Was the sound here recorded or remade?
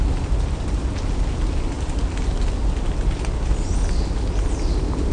recorded